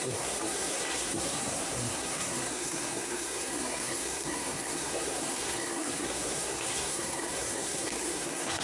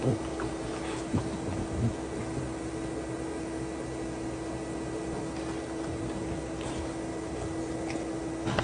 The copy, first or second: first